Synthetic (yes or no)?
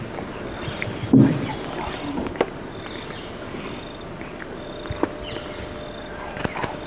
no